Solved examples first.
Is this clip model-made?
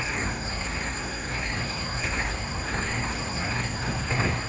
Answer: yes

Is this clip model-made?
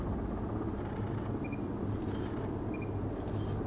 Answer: no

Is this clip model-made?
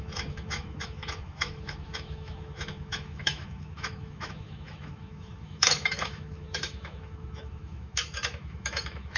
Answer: yes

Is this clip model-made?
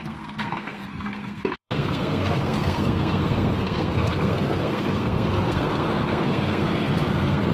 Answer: yes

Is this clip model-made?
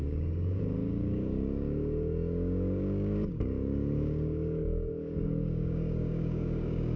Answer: yes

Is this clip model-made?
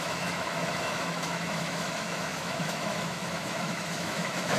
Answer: yes